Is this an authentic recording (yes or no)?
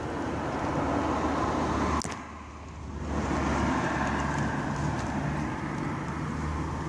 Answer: yes